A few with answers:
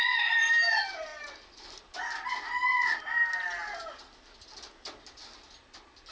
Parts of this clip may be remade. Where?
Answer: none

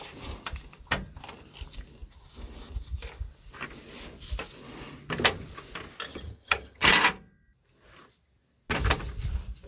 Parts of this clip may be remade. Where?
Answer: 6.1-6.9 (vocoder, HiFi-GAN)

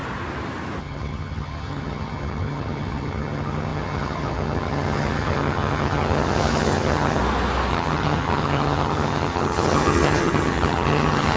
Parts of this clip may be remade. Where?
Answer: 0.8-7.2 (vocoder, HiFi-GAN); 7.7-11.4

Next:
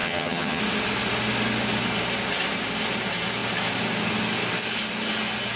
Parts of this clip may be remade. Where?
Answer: 0.0-0.6 (vocoder, HiFi-GAN)

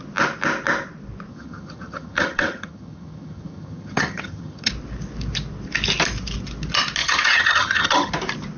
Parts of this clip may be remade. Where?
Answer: 1.3-4.7 (vocoder, HiFi-GAN); 7.0-8.1